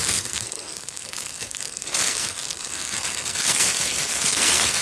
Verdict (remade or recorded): remade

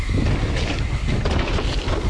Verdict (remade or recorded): recorded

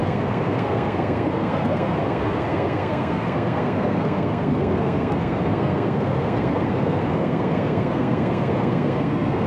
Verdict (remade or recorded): remade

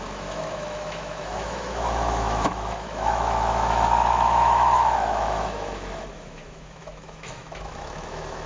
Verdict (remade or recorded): remade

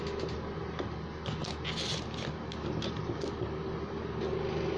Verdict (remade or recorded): recorded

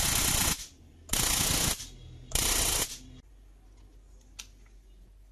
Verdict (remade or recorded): recorded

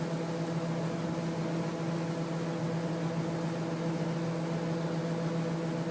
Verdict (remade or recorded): recorded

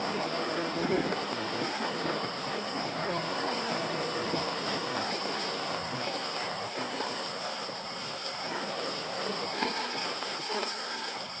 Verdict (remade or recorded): remade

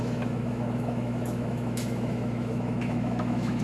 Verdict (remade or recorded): remade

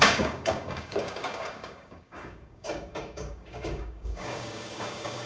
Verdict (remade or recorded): remade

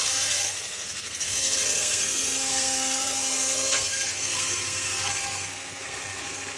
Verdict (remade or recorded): remade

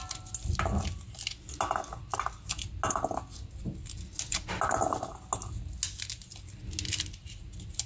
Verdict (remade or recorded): recorded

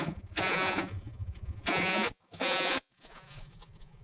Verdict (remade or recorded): remade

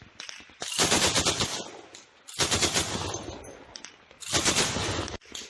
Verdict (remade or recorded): recorded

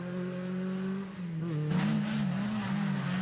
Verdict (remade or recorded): recorded